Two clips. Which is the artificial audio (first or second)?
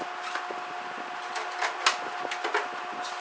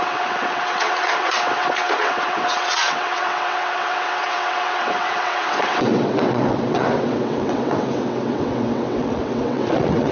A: second